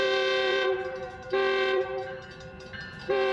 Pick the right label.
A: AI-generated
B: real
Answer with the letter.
A